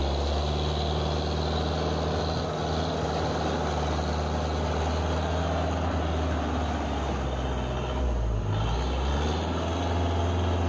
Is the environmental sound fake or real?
real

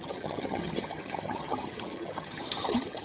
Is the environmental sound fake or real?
fake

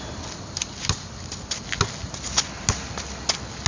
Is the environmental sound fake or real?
real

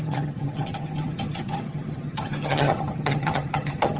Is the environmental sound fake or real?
fake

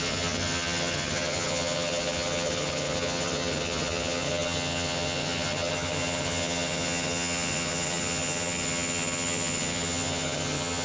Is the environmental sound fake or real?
fake